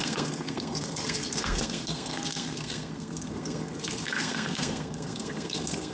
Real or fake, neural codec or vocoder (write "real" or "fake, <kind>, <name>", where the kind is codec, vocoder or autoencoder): fake, codec, SNAC